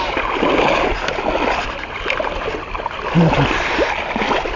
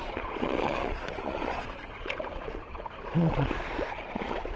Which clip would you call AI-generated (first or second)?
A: second